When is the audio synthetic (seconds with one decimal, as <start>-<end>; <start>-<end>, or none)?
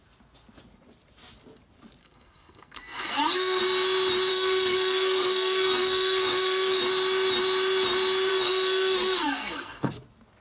2.0-3.6; 4.3-6.8; 8.3-9.9